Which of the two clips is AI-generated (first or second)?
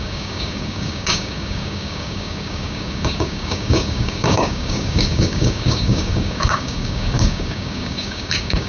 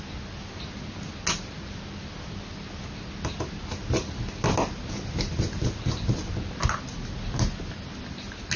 first